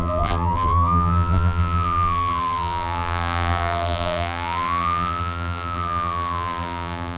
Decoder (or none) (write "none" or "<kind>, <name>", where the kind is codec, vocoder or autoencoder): vocoder, BigVGAN v2